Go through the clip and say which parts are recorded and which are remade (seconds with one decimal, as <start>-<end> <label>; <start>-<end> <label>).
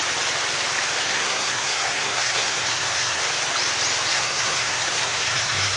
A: 0.0-1.0 recorded; 1.0-3.2 remade; 3.2-4.1 recorded; 4.1-5.8 remade